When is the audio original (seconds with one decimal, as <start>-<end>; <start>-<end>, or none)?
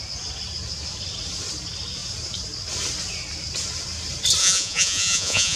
0.0-4.4